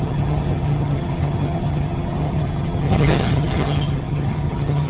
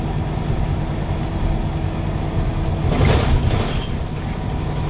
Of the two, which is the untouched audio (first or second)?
second